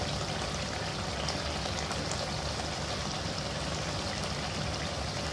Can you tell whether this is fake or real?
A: real